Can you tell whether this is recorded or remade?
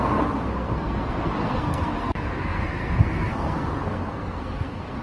remade